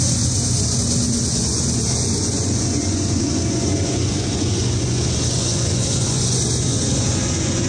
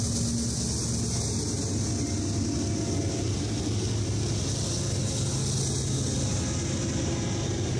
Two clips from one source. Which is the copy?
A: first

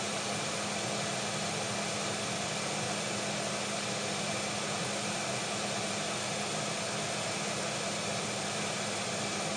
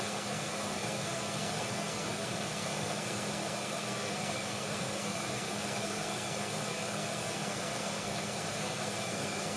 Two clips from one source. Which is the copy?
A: second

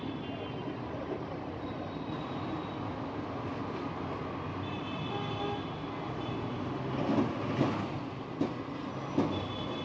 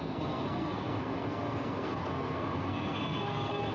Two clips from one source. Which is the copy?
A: second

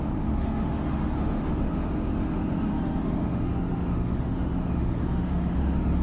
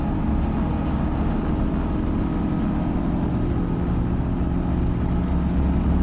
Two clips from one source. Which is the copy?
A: first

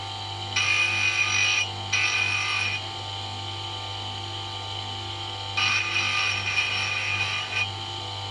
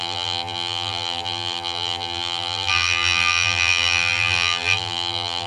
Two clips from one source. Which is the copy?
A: second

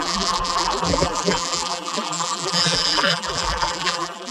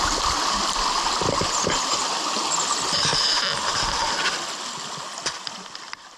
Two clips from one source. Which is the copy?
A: first